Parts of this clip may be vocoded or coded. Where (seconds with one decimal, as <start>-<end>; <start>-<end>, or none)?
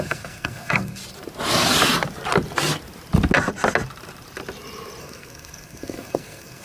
0.0-1.0; 5.0-6.6